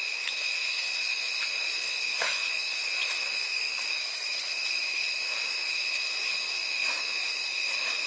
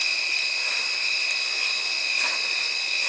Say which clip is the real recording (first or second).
second